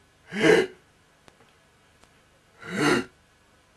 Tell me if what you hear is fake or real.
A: real